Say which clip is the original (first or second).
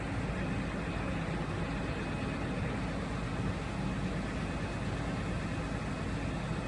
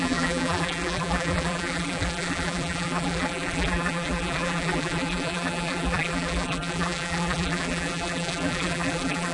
first